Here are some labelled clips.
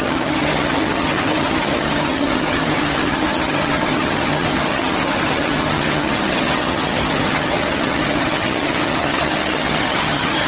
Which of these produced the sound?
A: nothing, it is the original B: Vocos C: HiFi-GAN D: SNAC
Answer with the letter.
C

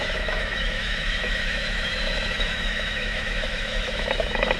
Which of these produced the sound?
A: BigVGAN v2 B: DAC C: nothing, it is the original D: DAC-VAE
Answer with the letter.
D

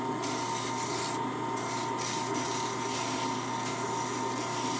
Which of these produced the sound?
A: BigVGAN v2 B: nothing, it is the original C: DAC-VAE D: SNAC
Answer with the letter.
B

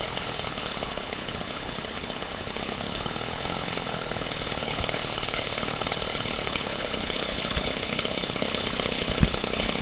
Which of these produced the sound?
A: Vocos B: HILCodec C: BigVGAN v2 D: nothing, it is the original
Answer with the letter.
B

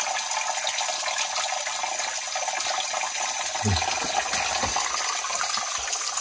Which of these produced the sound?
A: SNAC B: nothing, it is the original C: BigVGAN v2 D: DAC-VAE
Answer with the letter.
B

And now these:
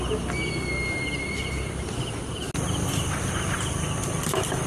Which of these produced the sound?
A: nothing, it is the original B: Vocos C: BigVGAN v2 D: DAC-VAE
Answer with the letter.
A